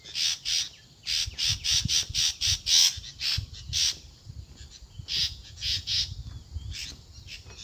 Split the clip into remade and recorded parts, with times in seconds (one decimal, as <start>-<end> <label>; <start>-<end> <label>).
0.0-5.2 recorded; 5.2-6.0 remade; 6.0-7.6 recorded

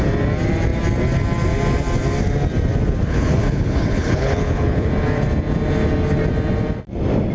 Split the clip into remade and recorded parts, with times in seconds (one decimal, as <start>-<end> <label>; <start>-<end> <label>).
0.0-3.0 recorded; 3.0-4.9 remade; 4.9-7.3 recorded